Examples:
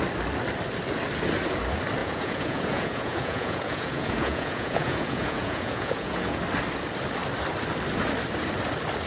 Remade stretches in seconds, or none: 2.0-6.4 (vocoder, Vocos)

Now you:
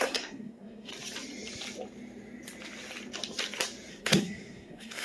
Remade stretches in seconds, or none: 0.0-0.9 (codec, SNAC); 3.9-5.0

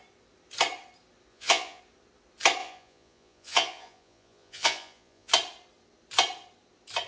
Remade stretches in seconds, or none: 1.3-1.8 (vocoder, Vocos); 2.6-5.3

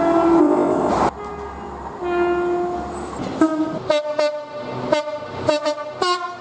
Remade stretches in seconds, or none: 0.4-0.9 (codec, ZipCodec)

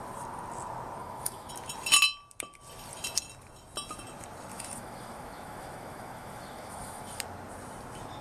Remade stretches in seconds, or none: 1.0-1.5 (autoencoder, DAC-VAE); 4.5-7.2

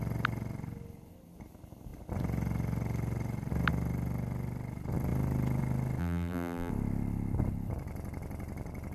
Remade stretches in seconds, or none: 6.0-6.7 (vocoder, BigVGAN v2)